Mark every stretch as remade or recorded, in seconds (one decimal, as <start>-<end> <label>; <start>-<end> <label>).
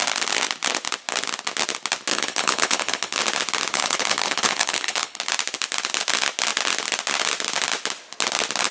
0.0-2.1 recorded; 2.1-3.2 remade; 3.2-3.7 recorded; 3.7-5.2 remade; 5.2-8.7 recorded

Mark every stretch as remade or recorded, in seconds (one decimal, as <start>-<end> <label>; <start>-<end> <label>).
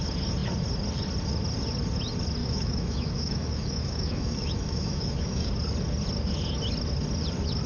0.0-2.4 recorded; 2.4-5.5 remade; 5.5-7.7 recorded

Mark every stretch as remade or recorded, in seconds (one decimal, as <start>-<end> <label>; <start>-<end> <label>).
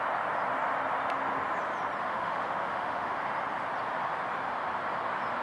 0.0-2.0 recorded; 2.0-3.2 remade; 3.2-5.4 recorded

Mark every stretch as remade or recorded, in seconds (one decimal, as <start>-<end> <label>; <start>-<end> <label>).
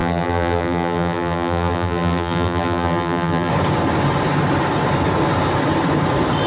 0.0-3.5 remade; 3.5-6.5 recorded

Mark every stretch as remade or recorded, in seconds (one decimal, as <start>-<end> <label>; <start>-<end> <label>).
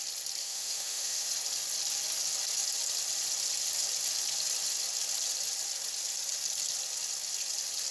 0.0-0.4 recorded; 0.4-1.3 remade; 1.3-7.9 recorded